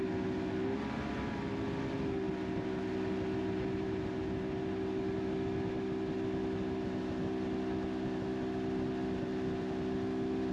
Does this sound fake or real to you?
real